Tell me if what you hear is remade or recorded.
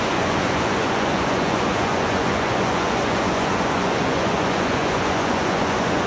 remade